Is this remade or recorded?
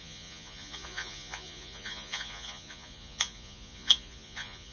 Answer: remade